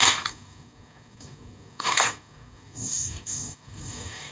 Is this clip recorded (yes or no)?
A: no